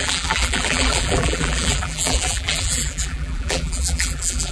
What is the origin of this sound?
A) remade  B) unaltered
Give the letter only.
A